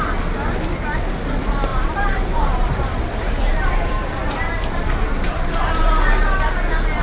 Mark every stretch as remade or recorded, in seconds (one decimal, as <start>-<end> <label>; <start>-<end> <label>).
0.0-1.7 recorded; 1.7-5.9 remade; 5.9-7.0 recorded